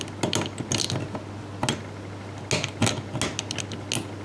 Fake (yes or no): no